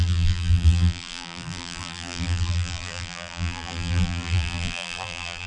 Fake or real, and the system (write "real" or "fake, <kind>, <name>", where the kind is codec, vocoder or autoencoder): fake, vocoder, BigVGAN v2